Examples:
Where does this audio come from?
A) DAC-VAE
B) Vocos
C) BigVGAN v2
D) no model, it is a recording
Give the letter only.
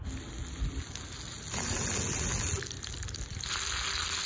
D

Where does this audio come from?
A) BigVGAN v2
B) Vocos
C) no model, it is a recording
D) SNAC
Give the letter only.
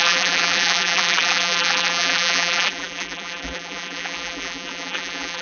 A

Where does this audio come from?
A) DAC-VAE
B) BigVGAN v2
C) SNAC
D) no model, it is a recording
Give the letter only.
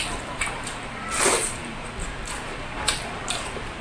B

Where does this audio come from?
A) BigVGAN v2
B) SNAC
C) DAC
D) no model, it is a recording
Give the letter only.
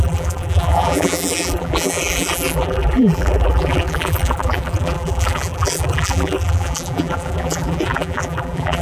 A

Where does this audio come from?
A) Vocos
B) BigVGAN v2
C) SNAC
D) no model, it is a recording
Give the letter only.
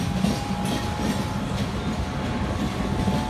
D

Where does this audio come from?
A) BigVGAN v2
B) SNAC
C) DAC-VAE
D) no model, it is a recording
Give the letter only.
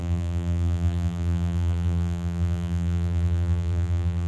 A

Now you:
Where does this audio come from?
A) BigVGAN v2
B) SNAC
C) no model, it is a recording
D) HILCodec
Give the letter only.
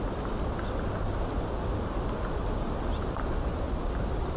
C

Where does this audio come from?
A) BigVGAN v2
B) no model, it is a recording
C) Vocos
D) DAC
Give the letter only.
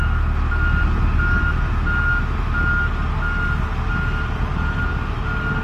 B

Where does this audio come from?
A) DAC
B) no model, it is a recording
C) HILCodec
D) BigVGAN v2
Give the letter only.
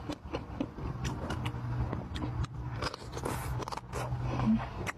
B